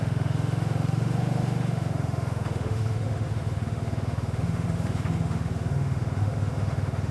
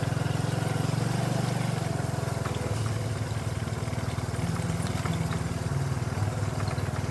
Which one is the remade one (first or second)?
first